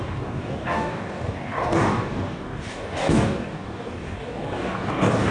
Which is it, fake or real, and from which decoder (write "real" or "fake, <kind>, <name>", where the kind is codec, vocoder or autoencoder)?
fake, codec, DAC